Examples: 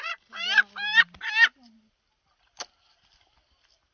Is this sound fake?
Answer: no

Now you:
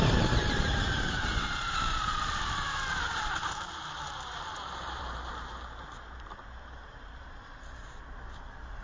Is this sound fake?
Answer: yes